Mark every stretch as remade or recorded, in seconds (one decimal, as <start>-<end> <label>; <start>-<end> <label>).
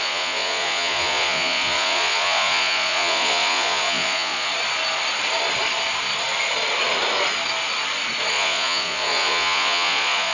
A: 0.0-4.5 remade; 4.5-8.3 recorded; 8.3-10.3 remade